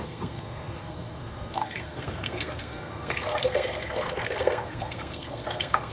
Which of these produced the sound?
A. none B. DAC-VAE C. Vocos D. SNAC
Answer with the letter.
D